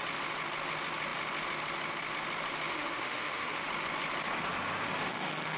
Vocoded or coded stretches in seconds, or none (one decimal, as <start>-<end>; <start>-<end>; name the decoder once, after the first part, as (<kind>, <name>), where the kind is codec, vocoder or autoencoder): 2.7-3.6 (autoencoder, DAC-VAE); 5.1-5.6